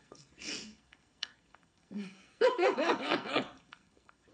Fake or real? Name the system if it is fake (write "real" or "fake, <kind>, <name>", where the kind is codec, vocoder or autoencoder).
fake, codec, SNAC